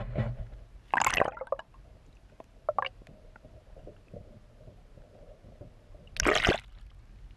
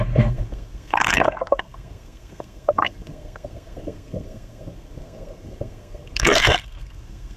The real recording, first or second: first